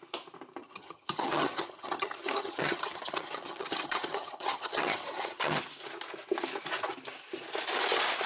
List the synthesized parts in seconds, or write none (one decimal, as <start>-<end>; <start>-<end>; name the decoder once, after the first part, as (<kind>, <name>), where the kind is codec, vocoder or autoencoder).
0.6-5.6 (vocoder, HiFi-GAN)